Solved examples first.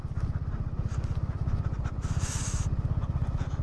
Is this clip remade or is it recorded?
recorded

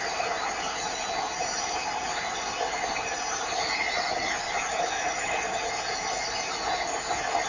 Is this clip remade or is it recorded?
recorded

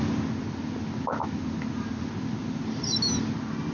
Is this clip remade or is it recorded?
recorded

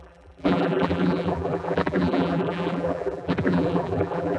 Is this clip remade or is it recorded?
remade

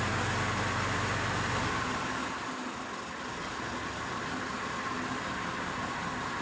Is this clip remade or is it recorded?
recorded